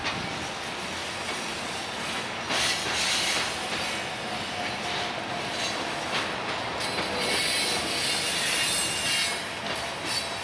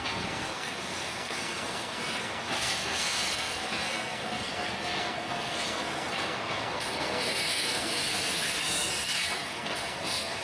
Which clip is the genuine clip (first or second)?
first